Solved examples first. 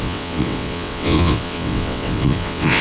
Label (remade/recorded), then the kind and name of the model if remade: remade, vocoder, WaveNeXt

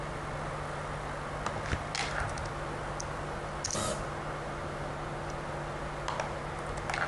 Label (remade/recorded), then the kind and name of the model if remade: recorded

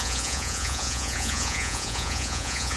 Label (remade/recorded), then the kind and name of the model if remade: remade, vocoder, Vocos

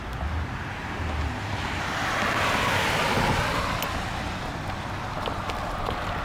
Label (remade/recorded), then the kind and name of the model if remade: recorded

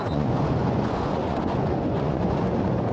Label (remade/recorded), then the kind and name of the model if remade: remade, vocoder, Vocos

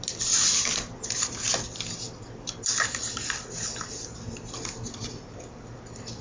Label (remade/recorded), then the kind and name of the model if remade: recorded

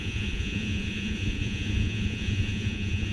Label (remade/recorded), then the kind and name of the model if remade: remade, vocoder, Vocos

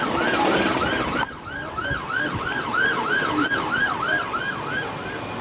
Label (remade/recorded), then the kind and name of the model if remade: recorded